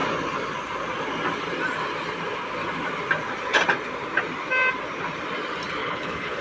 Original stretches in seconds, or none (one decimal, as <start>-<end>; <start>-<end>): 0.0-5.8